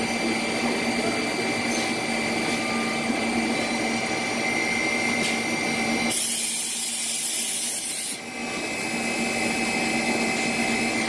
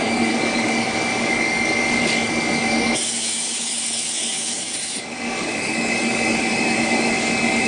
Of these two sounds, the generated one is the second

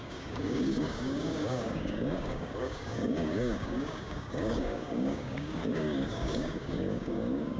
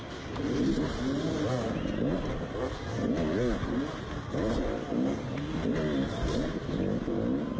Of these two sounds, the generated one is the first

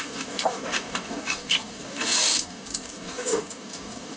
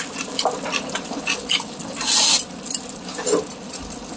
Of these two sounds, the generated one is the first